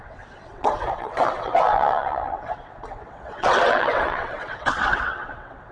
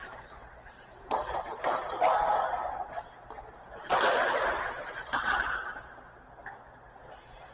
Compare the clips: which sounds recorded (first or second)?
second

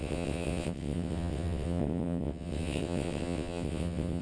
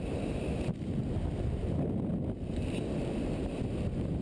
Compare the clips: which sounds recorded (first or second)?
second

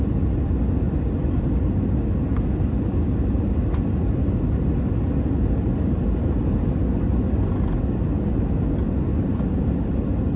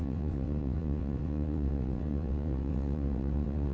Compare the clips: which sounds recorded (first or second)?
first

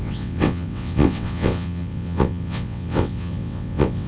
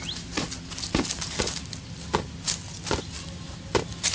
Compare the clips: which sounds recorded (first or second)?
second